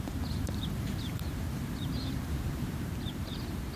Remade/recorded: remade